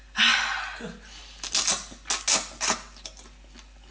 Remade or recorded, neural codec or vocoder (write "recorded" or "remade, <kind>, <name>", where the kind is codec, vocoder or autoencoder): recorded